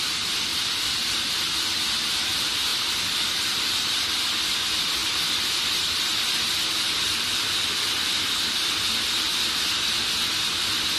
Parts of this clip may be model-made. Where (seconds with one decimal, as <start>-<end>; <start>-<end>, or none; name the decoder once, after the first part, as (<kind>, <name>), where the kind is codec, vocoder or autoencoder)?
0.5-1.3 (vocoder, BigVGAN v2); 2.7-4.0; 5.0-8.9